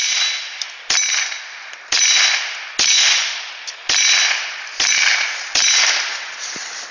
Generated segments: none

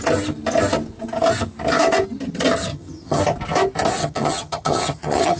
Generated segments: 2.7-3.2 (vocoder, HiFi-GAN); 4.0-5.4

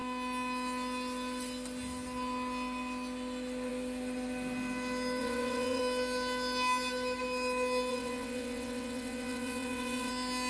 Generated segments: 5.2-5.8 (vocoder, WaveNeXt); 7.9-10.1

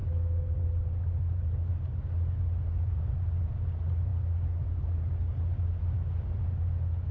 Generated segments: none

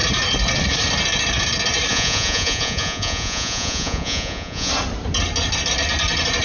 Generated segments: 1.9-4.7 (vocoder, Vocos)

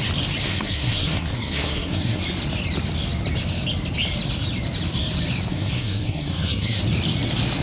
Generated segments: 0.4-2.2 (codec, SNAC); 5.5-6.8

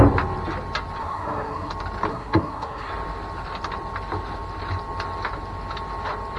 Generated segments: 1.0-1.7 (codec, SNAC); 2.1-2.9